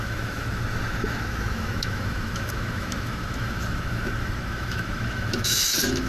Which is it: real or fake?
fake